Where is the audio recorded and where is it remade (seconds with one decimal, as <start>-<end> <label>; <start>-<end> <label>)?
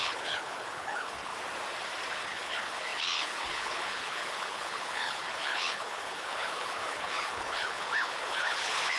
0.0-1.3 remade; 1.3-2.1 recorded; 2.1-9.0 remade